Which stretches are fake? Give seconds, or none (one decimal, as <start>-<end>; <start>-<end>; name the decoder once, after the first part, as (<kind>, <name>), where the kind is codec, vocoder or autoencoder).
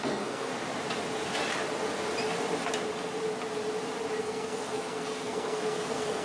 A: 0.0-0.5 (codec, SNAC); 4.2-6.2